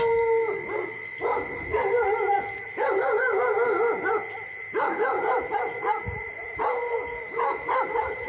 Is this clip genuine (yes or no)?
yes